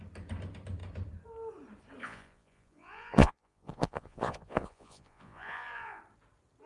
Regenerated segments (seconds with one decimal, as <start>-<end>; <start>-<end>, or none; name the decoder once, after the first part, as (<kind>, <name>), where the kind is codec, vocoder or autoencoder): 2.0-6.0 (vocoder, Vocos)